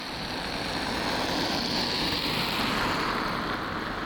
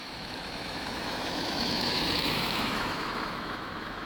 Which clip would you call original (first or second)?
first